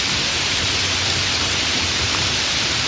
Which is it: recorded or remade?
remade